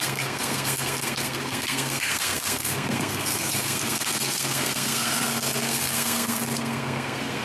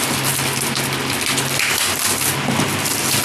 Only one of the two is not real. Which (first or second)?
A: first